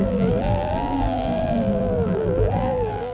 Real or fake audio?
fake